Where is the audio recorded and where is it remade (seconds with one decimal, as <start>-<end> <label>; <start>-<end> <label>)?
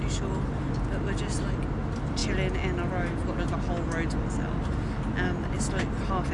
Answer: 0.0-6.3 recorded